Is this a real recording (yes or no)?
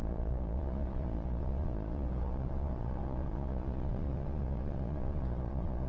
no